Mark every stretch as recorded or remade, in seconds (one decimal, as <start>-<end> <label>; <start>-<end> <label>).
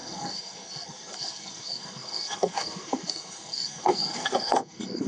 0.0-5.1 remade